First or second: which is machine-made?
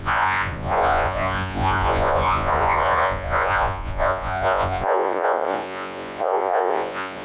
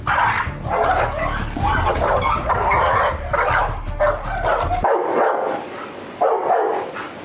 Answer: first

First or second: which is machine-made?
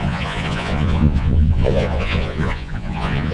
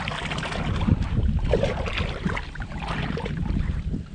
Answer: first